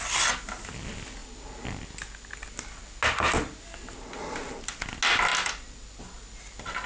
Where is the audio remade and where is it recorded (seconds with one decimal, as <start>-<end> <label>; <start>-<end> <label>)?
0.0-6.9 recorded